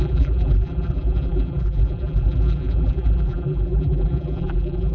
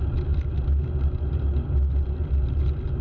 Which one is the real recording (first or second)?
second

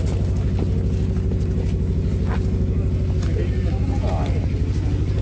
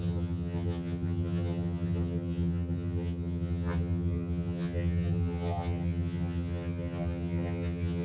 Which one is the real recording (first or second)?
first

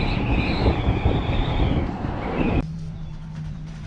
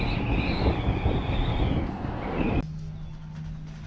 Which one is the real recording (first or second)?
second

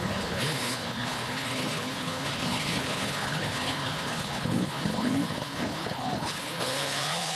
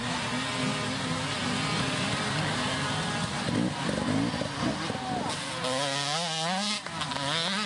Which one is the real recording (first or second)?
second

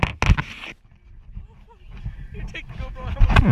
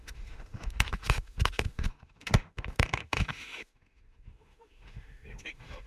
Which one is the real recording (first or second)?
first